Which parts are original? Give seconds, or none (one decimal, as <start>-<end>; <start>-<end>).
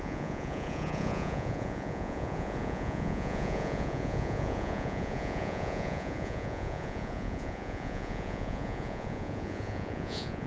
none